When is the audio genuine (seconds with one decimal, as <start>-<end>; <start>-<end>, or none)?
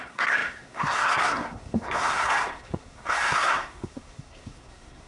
none